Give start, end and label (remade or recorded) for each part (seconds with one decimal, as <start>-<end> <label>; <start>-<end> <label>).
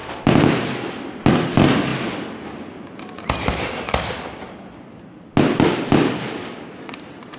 0.0-7.4 recorded